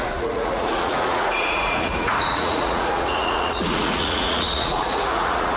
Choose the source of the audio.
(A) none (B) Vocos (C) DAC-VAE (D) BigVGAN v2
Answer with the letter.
B